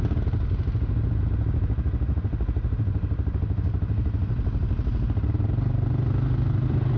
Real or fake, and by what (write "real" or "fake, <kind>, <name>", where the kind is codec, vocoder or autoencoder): real